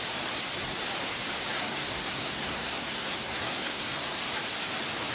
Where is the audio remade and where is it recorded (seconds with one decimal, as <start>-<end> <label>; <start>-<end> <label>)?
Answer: 0.0-1.5 recorded; 1.5-4.2 remade; 4.2-5.1 recorded